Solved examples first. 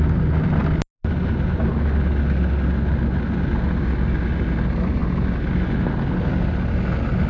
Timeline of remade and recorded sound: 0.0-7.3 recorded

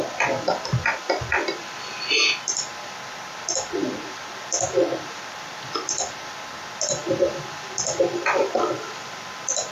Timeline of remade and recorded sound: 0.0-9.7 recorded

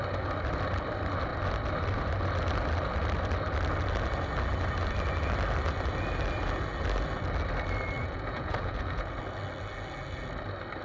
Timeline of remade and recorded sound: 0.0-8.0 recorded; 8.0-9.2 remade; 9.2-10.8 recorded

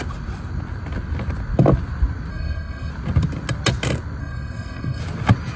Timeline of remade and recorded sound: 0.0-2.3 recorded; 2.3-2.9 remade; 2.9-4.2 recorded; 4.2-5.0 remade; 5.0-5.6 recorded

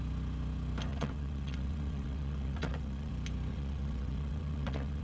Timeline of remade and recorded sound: 0.0-0.9 recorded; 0.9-3.1 remade; 3.1-3.5 recorded; 3.5-5.0 remade

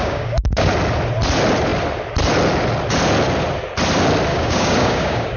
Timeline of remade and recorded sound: 0.0-0.7 remade; 0.7-4.3 recorded; 4.3-5.4 remade

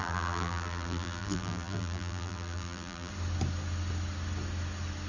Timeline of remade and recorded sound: 0.0-3.1 remade; 3.1-5.1 recorded

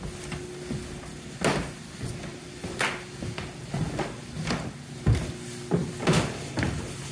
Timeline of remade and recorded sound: 0.0-7.1 recorded